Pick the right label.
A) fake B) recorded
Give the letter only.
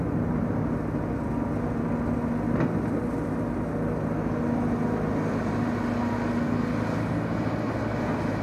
B